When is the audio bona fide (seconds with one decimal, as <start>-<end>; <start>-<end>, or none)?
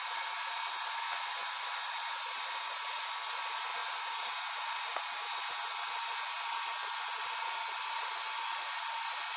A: 0.0-3.8; 5.7-9.4